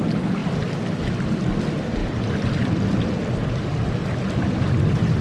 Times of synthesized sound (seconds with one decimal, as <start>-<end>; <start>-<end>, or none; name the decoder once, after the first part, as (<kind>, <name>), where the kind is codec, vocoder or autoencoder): none